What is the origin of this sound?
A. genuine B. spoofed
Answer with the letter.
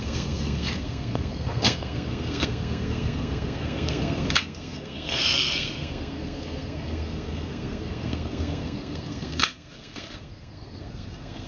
B